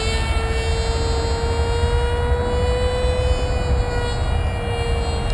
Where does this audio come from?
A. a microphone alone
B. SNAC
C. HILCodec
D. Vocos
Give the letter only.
A